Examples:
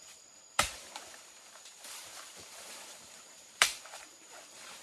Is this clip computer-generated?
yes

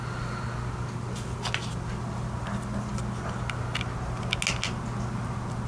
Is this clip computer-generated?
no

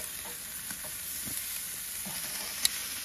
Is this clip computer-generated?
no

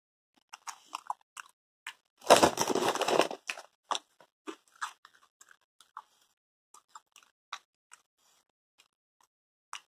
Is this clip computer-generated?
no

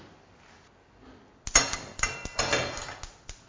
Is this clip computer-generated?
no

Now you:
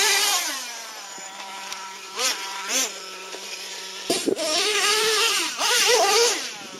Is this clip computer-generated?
yes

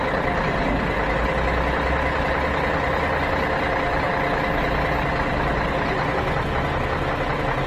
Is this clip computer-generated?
no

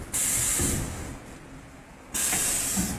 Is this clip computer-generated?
no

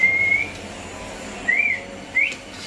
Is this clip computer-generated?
no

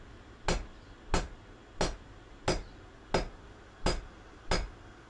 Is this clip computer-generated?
no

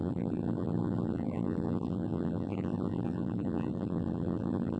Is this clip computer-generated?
yes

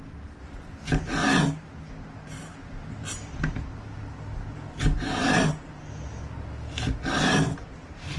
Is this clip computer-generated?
no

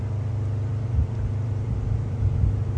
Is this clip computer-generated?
yes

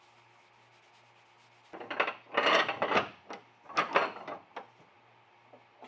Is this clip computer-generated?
no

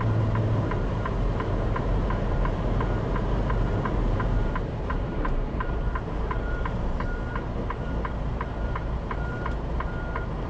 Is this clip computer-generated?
yes